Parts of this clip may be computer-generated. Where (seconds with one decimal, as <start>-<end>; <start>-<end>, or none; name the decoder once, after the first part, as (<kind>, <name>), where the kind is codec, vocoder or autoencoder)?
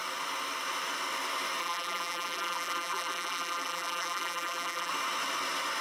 1.6-4.9 (vocoder, BigVGAN v2)